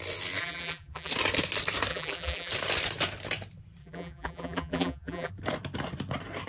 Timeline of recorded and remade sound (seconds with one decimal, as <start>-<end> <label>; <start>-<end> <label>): 0.0-0.4 recorded; 0.4-1.1 remade; 1.1-1.9 recorded; 1.9-2.5 remade; 2.5-3.8 recorded; 3.8-5.3 remade; 5.3-6.5 recorded

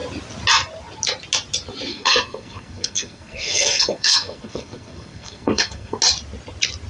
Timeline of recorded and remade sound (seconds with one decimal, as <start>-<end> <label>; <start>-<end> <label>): 0.0-1.9 recorded; 1.9-6.0 remade; 6.0-6.9 recorded

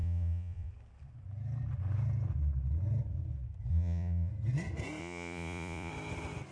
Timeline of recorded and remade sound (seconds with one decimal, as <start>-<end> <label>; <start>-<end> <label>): 0.0-0.7 remade; 0.7-3.7 recorded; 3.7-4.3 remade; 4.3-5.0 recorded; 5.0-5.9 remade; 5.9-6.5 recorded